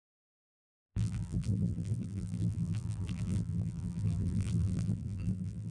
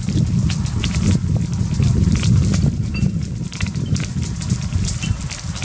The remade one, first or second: first